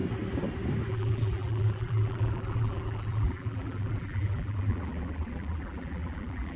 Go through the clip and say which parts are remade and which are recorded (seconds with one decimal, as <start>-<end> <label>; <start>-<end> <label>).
0.0-0.9 recorded; 0.9-6.6 remade